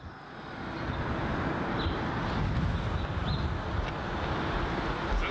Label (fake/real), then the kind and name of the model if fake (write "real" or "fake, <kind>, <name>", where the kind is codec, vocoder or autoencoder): real